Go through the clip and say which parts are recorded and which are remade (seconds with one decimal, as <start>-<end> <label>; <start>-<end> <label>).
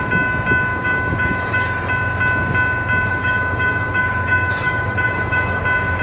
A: 0.0-0.7 recorded; 0.7-1.9 remade; 1.9-3.1 recorded; 3.1-5.6 remade; 5.6-6.0 recorded